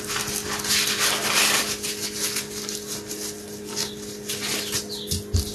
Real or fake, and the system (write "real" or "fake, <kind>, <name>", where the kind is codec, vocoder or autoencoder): real